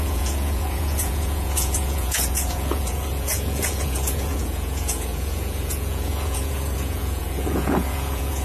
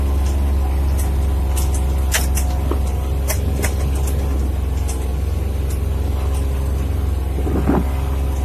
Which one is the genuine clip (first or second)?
second